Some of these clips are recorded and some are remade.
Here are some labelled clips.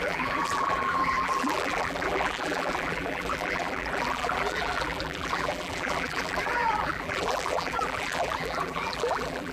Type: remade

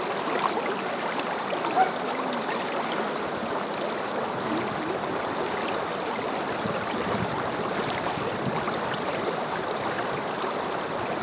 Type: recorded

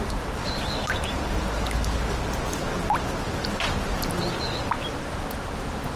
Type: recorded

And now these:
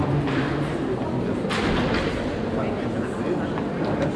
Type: recorded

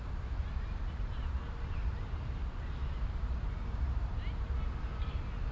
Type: recorded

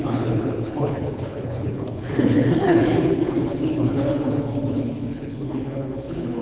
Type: remade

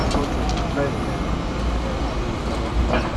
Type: recorded